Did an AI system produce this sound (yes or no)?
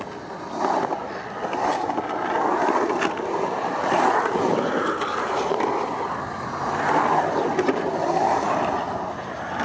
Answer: no